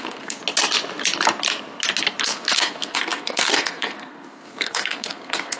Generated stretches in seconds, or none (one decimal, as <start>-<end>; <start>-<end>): 0.0-0.4; 2.2-5.6